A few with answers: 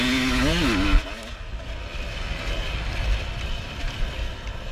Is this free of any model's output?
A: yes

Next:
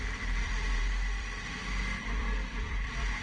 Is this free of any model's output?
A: no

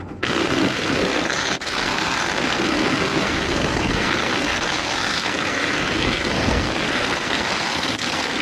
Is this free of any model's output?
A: no